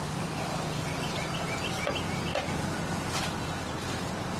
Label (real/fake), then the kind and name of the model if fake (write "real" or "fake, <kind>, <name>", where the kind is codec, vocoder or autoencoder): fake, vocoder, BigVGAN v2